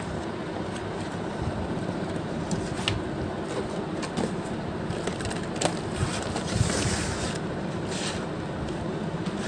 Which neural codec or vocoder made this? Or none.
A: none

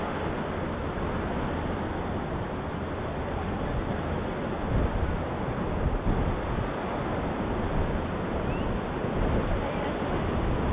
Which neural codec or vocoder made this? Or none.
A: none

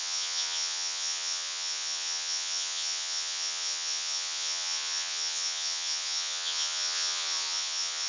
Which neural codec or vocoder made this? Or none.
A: vocoder, Vocos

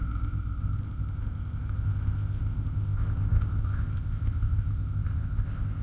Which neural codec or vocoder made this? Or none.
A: codec, ZipCodec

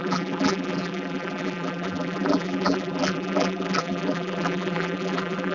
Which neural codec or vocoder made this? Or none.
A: vocoder, BigVGAN v2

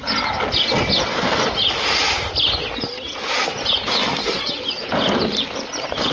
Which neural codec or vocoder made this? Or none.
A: none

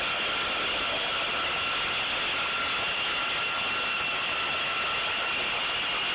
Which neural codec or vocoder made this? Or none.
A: none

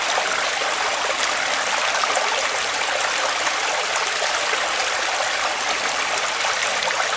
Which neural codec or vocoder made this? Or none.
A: none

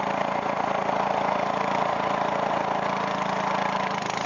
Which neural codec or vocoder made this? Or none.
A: none